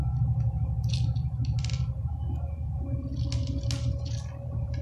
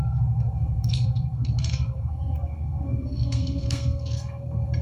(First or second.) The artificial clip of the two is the second